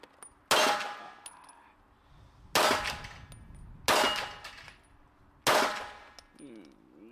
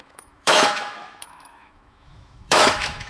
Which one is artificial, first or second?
second